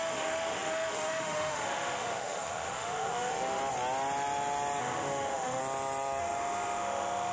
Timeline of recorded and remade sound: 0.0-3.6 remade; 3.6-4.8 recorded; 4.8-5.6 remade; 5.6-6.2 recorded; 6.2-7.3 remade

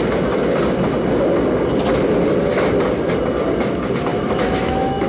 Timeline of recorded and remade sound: 0.0-4.1 recorded; 4.1-5.1 remade

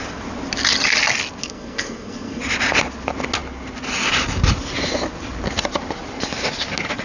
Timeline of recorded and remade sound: 0.0-1.4 recorded; 1.4-2.4 remade; 2.4-7.0 recorded

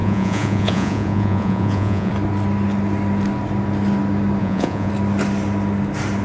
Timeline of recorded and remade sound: 0.0-2.1 remade; 2.1-4.4 recorded; 4.4-4.9 remade; 4.9-6.2 recorded

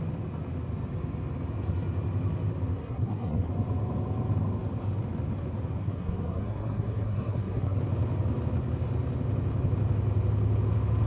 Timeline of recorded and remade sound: 0.0-2.8 recorded; 2.8-3.5 remade; 3.5-5.8 recorded; 5.8-7.8 remade; 7.8-11.1 recorded

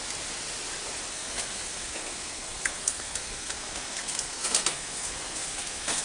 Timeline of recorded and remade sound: 0.0-1.1 recorded; 1.1-6.0 remade